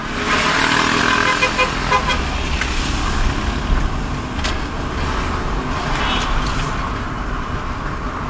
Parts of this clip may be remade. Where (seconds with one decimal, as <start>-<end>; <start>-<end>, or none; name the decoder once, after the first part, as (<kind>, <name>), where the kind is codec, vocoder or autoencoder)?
none